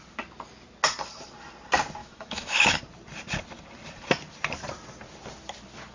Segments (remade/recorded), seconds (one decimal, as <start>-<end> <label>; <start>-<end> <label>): 0.0-2.0 recorded; 2.0-2.8 remade; 2.8-5.9 recorded